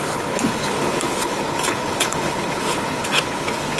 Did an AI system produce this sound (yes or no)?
yes